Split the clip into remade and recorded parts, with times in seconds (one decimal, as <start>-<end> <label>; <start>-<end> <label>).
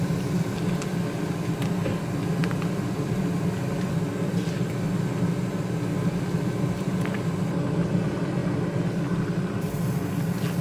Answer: 0.0-2.4 recorded; 2.4-3.9 remade; 3.9-10.6 recorded